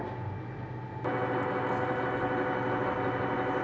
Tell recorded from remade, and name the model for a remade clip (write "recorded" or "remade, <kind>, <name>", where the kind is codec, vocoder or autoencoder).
recorded